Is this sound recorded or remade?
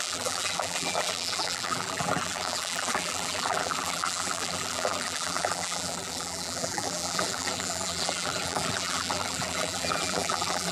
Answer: remade